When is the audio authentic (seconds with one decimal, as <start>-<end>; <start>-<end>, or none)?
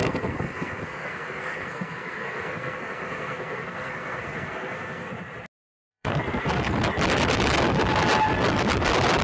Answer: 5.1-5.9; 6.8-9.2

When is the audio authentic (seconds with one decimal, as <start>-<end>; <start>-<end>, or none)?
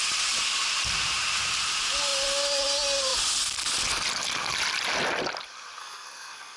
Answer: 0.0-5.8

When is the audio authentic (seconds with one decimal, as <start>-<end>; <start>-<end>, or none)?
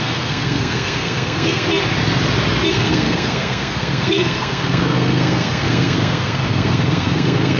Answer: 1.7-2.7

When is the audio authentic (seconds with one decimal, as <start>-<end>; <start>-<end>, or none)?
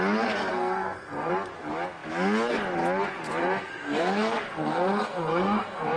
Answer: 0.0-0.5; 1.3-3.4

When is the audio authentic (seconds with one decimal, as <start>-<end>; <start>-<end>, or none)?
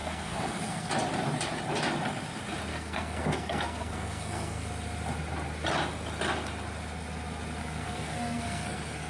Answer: 0.9-2.7; 4.7-7.6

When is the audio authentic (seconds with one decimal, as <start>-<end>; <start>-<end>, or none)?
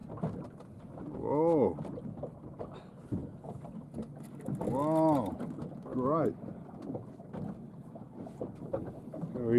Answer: 0.0-9.6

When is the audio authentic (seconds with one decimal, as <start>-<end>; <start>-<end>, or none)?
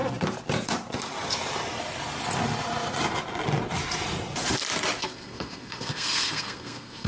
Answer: 0.0-5.0